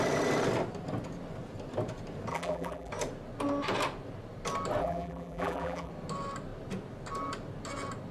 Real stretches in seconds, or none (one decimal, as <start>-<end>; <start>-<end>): 0.0-2.3; 2.9-4.8; 5.9-8.1